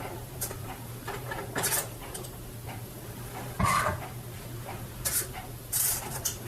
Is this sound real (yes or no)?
no